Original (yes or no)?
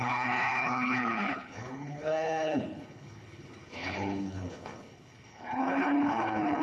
no